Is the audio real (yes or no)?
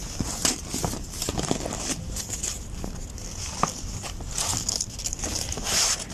yes